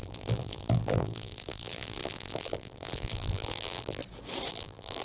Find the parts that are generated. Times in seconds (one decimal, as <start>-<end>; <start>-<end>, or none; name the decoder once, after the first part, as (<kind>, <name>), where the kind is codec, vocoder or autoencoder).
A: 0.0-4.0 (vocoder, BigVGAN v2); 4.5-5.0